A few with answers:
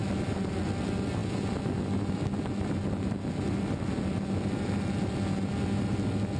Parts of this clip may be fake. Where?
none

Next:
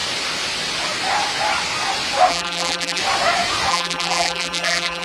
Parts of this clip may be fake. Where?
2.3-3.0; 3.7-5.0

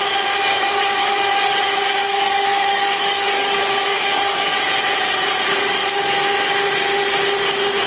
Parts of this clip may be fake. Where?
0.5-1.6; 2.0-4.6

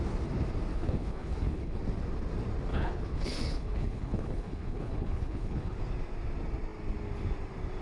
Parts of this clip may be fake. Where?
0.7-1.8; 2.7-5.8

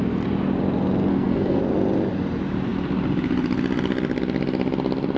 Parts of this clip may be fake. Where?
1.1-1.6